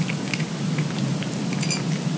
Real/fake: real